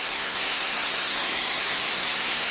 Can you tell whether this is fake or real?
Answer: fake